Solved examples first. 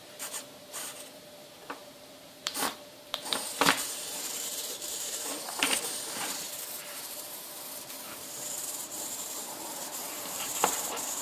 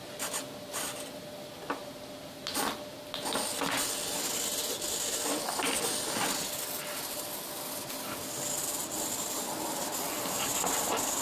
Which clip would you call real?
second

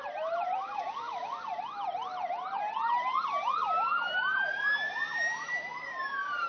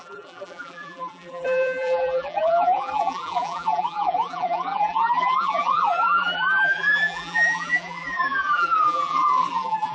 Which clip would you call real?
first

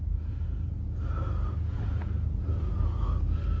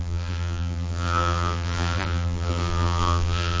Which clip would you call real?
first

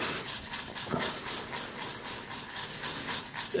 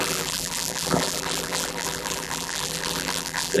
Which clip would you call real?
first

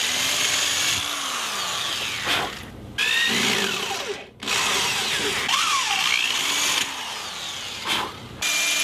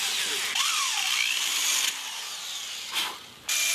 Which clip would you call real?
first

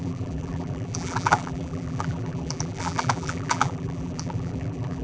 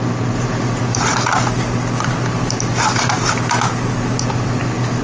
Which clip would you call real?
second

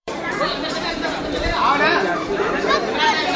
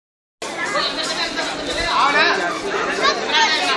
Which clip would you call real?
second